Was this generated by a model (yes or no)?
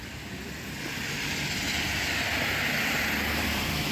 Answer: no